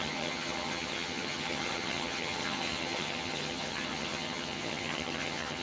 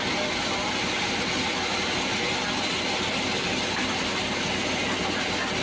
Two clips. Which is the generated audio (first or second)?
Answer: first